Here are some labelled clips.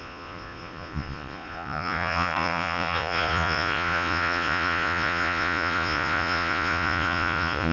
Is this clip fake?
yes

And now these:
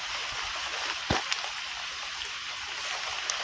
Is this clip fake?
no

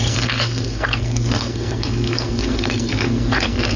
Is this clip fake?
yes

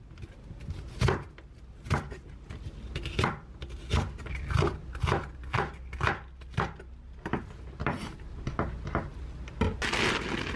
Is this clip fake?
no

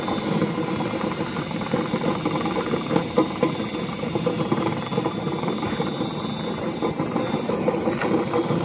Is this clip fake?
no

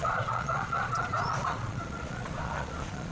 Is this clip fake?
yes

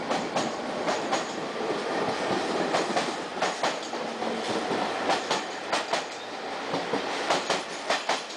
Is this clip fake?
yes